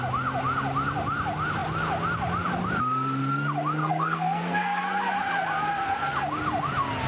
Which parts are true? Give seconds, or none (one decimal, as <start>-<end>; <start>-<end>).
0.0-3.8; 4.8-7.1